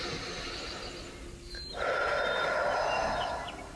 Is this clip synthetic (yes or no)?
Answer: no